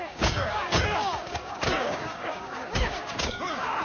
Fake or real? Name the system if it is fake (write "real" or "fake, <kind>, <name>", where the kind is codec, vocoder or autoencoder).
fake, codec, DAC